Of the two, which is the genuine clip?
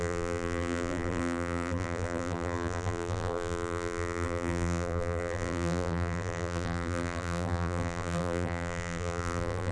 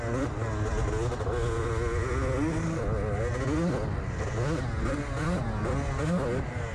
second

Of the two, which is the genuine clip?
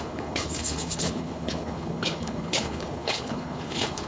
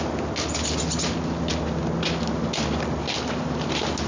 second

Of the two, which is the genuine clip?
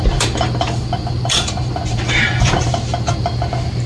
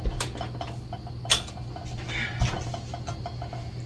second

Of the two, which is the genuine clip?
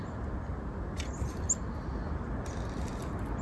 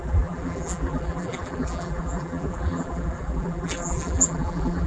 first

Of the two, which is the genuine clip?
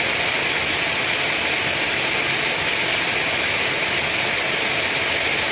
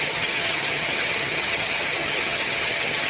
first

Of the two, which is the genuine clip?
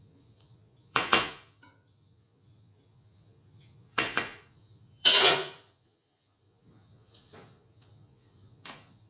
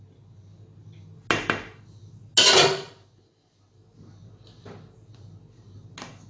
second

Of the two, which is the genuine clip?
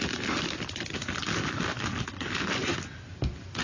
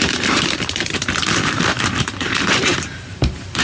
first